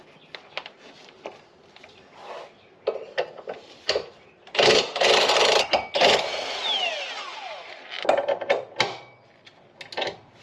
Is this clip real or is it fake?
real